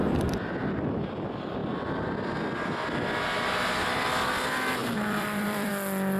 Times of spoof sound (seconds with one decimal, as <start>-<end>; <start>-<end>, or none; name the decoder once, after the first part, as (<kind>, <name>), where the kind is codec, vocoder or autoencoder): 0.0-1.1 (vocoder, BigVGAN v2); 4.8-5.7